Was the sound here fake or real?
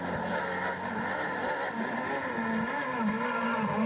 real